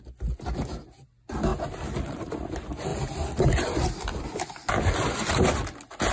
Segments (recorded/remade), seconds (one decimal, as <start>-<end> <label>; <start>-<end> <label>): 0.0-2.9 recorded; 2.9-4.7 remade; 4.7-6.1 recorded